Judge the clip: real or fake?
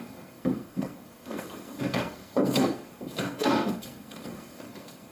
fake